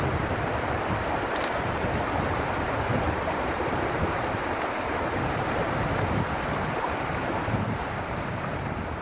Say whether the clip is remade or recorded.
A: remade